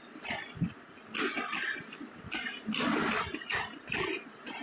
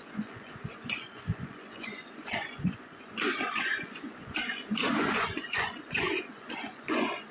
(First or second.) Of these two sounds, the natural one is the first